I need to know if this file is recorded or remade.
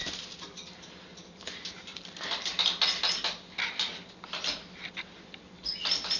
recorded